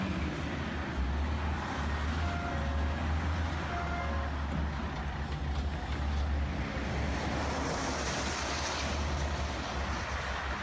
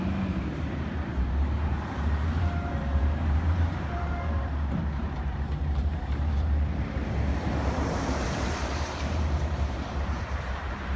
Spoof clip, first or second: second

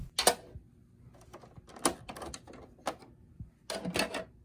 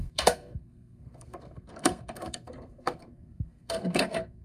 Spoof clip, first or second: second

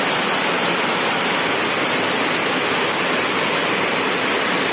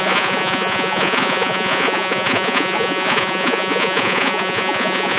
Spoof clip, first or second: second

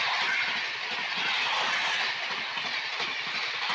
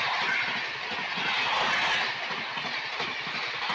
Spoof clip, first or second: first